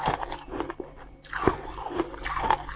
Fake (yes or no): no